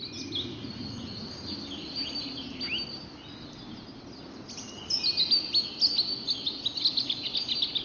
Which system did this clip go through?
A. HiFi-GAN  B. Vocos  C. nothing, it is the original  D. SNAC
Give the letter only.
C